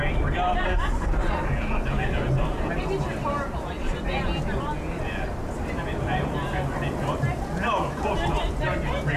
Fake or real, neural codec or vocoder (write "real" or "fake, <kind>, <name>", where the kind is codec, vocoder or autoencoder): real